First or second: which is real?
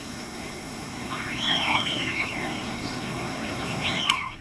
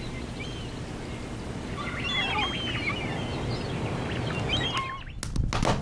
second